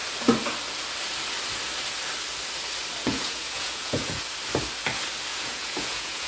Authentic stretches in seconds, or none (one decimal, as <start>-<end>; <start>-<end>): 0.0-3.0; 4.2-5.3